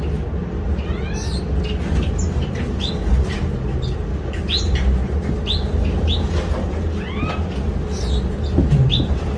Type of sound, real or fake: real